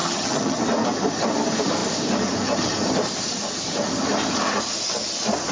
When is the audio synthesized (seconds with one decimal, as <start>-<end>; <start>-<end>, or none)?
0.0-0.6